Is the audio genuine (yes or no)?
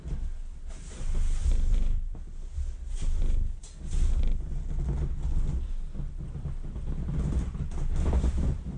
yes